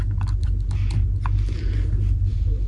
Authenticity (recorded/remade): recorded